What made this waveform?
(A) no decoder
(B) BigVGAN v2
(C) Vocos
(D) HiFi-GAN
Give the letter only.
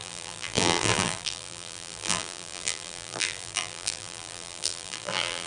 B